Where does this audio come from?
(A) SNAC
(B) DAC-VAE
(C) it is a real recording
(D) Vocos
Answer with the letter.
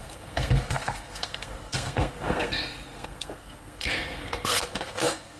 A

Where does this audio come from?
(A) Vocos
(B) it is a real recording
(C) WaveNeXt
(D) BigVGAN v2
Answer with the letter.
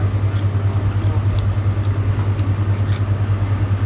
B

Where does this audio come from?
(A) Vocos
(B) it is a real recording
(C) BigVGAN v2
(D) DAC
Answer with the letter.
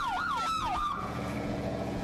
A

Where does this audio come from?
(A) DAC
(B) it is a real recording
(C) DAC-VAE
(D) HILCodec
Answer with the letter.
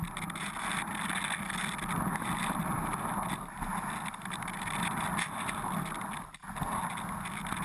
B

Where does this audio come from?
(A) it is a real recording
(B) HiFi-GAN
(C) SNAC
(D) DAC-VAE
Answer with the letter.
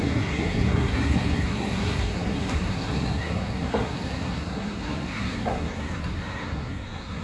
C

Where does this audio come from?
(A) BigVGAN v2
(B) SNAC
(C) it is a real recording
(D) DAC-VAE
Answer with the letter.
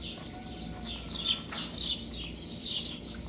C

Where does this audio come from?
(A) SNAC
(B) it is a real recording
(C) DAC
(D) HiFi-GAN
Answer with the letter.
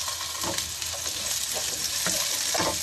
B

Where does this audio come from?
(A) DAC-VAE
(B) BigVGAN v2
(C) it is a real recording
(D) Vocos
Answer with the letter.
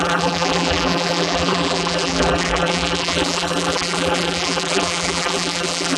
B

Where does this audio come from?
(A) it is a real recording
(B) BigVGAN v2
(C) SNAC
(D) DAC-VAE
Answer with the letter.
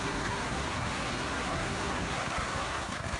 C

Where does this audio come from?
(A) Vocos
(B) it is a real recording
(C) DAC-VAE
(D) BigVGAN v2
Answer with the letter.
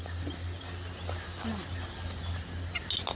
B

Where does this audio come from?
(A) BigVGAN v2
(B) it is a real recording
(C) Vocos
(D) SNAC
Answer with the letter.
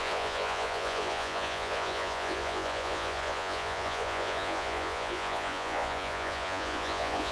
C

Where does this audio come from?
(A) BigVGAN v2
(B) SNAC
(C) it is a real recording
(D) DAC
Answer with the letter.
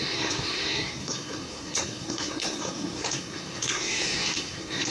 B